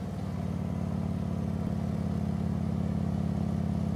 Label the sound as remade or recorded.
recorded